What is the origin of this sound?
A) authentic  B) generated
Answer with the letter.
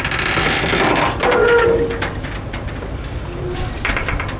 A